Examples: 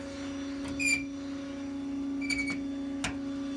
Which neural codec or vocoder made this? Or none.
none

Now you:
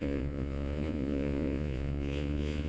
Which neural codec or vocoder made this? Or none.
vocoder, Vocos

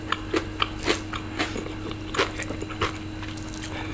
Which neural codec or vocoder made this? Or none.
none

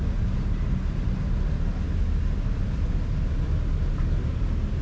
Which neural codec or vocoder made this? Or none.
none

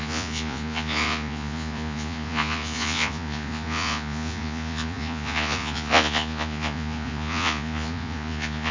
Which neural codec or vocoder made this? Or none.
vocoder, Vocos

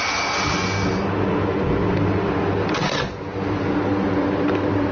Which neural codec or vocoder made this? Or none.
none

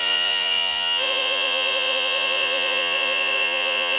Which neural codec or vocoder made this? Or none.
vocoder, Vocos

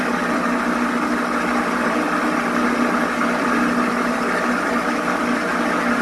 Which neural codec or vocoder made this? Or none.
none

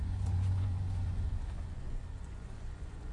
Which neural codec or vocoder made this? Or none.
vocoder, Vocos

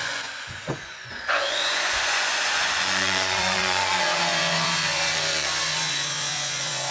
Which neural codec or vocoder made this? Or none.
vocoder, Vocos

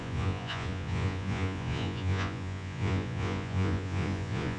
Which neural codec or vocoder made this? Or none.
vocoder, Vocos